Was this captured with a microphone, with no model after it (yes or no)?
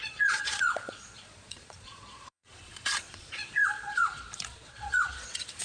no